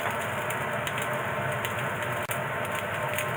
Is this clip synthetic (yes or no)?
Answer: no